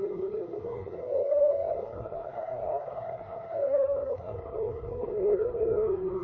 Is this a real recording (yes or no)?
no